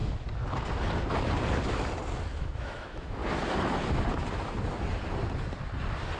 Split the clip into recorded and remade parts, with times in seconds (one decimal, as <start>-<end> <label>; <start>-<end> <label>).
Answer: 0.0-2.4 recorded; 2.4-3.2 remade; 3.2-6.2 recorded